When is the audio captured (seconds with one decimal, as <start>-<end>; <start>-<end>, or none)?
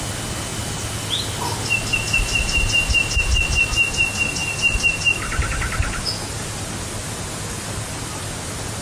0.0-8.8